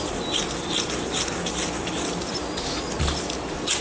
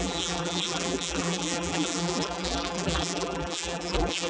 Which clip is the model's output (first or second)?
second